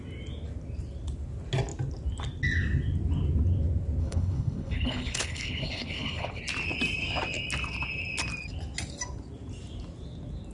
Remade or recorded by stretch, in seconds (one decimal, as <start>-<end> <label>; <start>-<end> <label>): 0.0-4.0 recorded; 4.0-6.4 remade; 6.4-10.5 recorded